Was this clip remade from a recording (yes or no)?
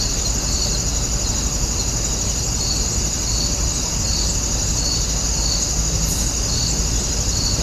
no